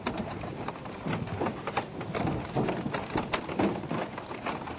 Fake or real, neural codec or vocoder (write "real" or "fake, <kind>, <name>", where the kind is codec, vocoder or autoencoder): real